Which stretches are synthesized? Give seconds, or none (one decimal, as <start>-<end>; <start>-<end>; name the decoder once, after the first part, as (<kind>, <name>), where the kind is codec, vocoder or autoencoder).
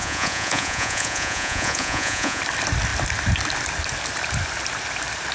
0.0-2.4 (vocoder, Vocos)